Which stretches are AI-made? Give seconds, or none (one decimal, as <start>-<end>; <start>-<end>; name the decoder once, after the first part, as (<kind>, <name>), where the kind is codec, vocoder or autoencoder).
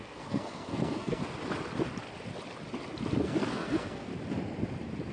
0.0-1.2 (codec, SNAC); 3.2-4.1